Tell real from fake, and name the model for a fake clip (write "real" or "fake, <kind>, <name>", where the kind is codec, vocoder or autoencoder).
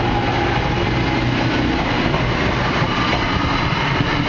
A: real